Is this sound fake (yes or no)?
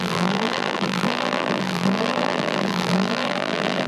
yes